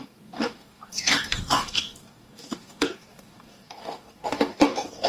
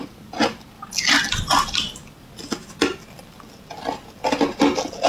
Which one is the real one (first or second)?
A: second